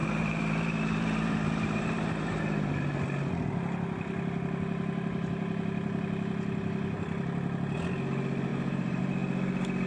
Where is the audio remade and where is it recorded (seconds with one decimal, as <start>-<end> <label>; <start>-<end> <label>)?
0.0-2.4 remade; 2.4-8.5 recorded; 8.5-9.0 remade; 9.0-9.9 recorded